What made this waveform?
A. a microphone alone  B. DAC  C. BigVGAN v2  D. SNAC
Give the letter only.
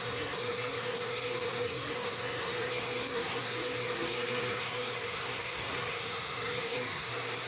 D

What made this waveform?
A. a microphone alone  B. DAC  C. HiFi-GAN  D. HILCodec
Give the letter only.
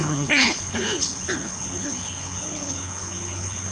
D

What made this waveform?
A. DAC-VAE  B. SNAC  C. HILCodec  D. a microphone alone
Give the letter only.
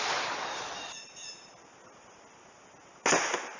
D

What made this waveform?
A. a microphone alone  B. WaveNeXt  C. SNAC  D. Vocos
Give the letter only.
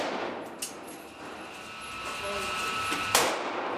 A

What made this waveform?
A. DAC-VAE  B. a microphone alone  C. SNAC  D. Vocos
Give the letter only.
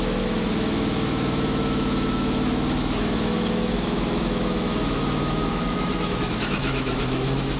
A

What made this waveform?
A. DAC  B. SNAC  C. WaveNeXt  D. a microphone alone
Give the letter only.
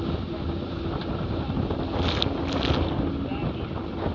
D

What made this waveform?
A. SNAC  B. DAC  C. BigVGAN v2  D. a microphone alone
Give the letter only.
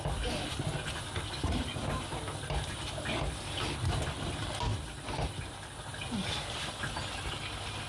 D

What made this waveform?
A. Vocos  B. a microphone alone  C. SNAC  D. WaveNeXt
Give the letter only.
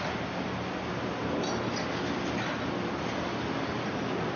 B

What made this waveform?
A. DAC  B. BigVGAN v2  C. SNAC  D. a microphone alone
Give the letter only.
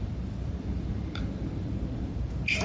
B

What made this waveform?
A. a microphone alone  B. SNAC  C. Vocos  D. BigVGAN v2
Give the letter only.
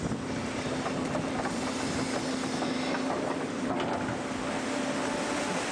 A